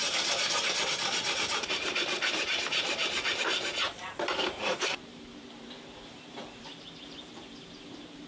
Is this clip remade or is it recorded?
remade